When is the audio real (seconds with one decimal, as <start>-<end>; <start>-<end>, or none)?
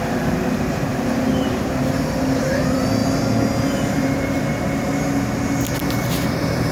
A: 3.0-3.9; 4.4-5.8